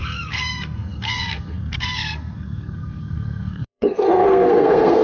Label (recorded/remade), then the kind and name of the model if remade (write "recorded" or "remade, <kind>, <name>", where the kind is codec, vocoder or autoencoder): remade, codec, SNAC